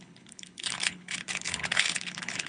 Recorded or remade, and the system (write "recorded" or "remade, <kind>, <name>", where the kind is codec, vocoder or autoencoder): remade, codec, HILCodec